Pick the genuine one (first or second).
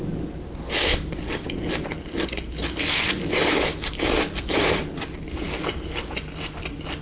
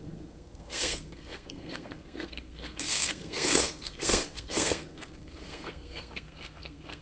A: first